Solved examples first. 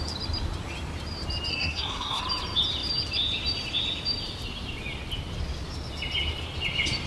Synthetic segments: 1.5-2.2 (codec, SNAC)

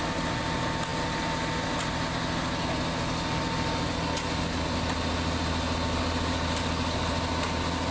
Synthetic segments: none

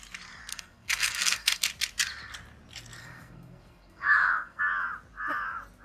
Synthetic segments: 0.5-1.6 (codec, SNAC); 3.0-4.6

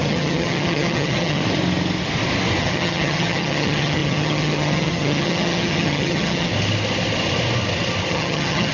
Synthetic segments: 0.0-1.4 (vocoder, HiFi-GAN); 2.6-6.5; 8.1-8.7

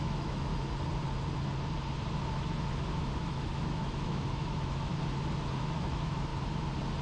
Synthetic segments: 0.0-0.5 (autoencoder, DAC-VAE); 3.2-4.9; 5.6-6.3

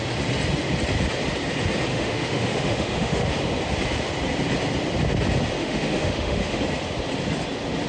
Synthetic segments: 1.9-3.3 (autoencoder, DAC-VAE); 5.6-6.6

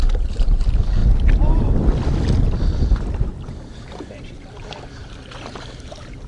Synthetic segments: 0.0-1.0 (vocoder, BigVGAN v2); 3.3-6.3

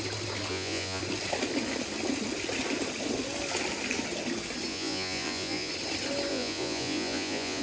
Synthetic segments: 0.5-1.0 (vocoder, Vocos); 4.7-5.7; 6.3-7.6